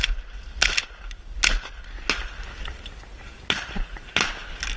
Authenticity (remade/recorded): recorded